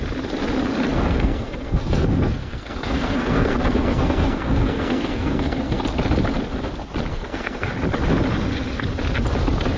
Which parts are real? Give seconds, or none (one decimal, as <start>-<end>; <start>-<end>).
0.0-0.9; 5.8-7.1; 7.7-9.8